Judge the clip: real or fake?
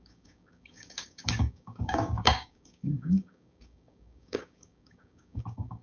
fake